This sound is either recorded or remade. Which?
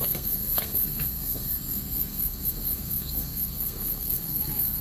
remade